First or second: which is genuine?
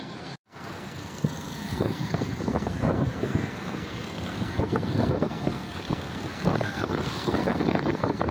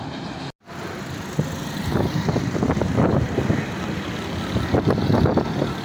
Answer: second